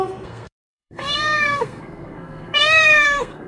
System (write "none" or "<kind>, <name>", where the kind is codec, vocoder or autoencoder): codec, SNAC